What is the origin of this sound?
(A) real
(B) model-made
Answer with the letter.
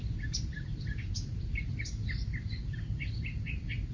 A